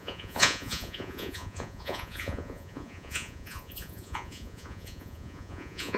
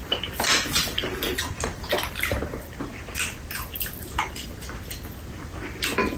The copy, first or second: first